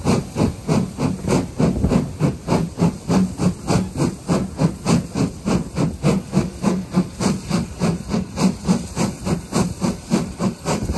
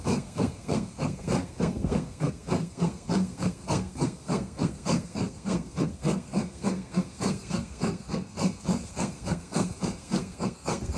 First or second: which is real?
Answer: first